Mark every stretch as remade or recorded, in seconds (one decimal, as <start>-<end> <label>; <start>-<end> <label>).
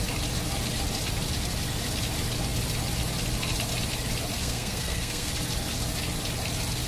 0.0-4.4 recorded; 4.4-5.3 remade; 5.3-6.9 recorded